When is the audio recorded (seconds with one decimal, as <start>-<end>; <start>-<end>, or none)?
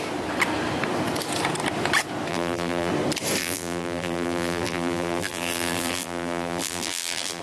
0.0-2.3; 2.9-3.4